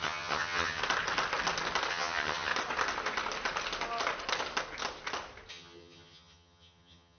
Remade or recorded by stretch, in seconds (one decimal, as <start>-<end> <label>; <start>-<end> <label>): 0.0-0.8 remade; 0.8-1.9 recorded; 1.9-2.5 remade; 2.5-5.5 recorded; 5.5-7.2 remade